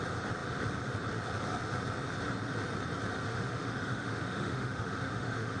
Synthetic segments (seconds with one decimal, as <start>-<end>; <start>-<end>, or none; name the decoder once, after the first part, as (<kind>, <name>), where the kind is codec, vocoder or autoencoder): 3.3-5.6 (autoencoder, DAC-VAE)